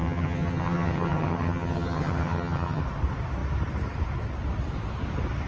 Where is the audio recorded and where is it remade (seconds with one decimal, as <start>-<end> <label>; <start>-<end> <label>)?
0.0-2.8 remade; 2.8-5.5 recorded